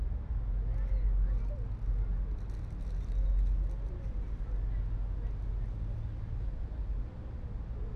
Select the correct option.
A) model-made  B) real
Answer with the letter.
B